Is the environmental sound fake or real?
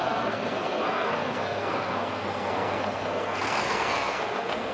fake